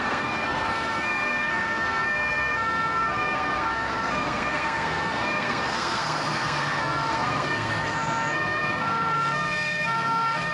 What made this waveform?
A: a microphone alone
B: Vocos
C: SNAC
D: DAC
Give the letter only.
C